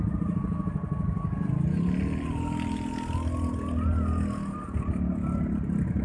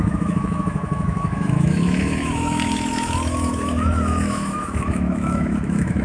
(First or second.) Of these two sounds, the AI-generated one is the second